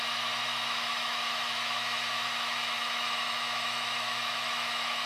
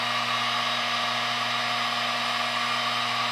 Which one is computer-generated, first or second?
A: first